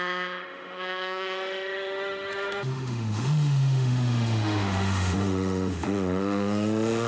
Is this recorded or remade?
remade